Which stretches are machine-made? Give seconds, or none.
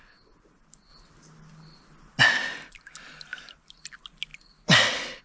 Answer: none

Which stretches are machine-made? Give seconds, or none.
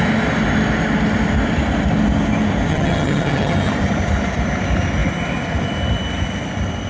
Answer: 2.7-3.7 (vocoder, HiFi-GAN)